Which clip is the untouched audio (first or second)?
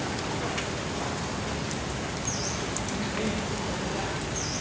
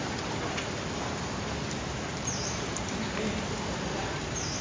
first